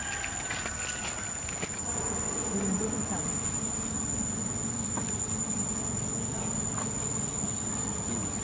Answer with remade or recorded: recorded